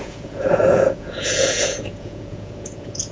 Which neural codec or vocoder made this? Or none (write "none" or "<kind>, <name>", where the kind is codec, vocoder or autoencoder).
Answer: vocoder, Vocos